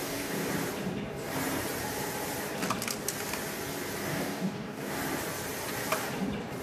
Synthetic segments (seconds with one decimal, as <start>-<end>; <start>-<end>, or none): 0.0-0.5; 4.1-5.0